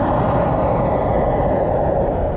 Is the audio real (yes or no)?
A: yes